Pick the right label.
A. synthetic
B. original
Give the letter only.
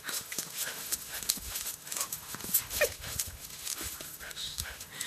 A